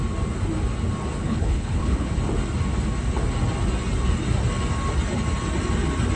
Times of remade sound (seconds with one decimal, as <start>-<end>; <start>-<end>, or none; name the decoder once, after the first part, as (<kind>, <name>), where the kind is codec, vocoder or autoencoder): 1.2-2.1 (codec, HILCodec)